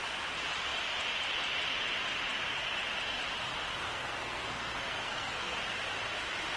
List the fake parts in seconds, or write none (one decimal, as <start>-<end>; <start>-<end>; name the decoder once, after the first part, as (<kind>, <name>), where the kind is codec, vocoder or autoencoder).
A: 3.8-5.6 (codec, SNAC)